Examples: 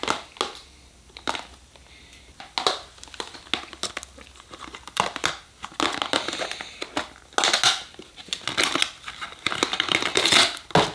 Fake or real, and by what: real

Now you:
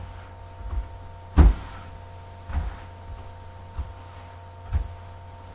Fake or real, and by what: real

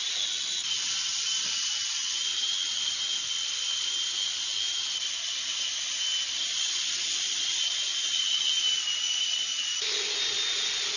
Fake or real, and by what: real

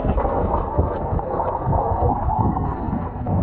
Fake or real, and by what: fake, codec, SNAC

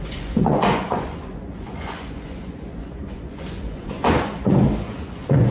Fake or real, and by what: fake, vocoder, Vocos